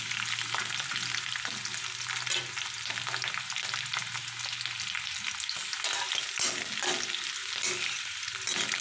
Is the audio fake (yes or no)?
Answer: no